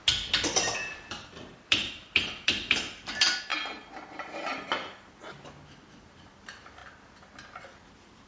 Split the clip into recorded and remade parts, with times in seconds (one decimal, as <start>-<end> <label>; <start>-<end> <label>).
0.0-3.5 remade; 3.5-4.1 recorded; 4.1-4.5 remade; 4.5-5.7 recorded; 5.7-6.8 remade; 6.8-7.9 recorded; 7.9-8.3 remade